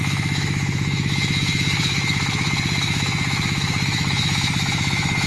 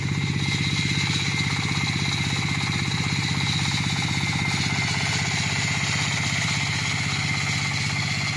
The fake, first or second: first